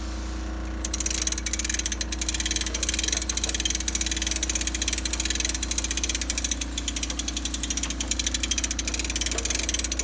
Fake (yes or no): no